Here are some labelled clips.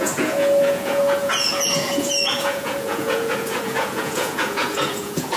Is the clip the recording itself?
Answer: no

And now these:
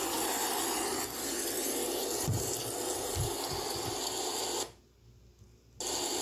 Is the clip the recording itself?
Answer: yes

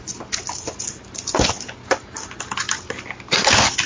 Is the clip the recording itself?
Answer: yes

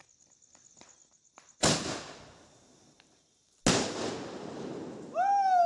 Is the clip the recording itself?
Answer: yes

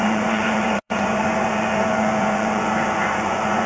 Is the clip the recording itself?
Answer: no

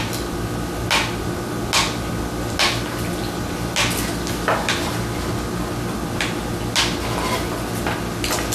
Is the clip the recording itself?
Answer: yes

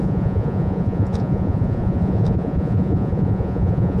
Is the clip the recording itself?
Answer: no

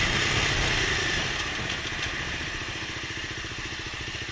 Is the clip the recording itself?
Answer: yes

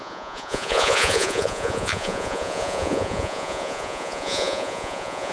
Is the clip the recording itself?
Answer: no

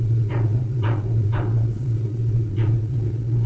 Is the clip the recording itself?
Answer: no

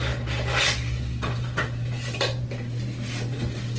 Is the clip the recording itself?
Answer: yes